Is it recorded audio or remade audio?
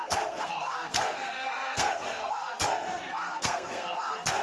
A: remade